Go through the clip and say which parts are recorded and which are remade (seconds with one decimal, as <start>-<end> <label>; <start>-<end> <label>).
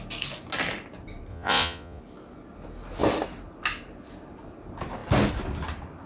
0.0-1.3 recorded; 1.3-2.0 remade; 2.0-6.1 recorded